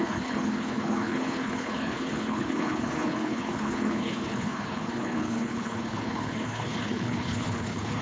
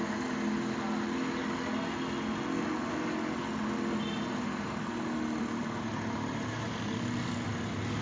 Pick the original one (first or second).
second